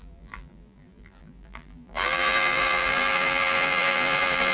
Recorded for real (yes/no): no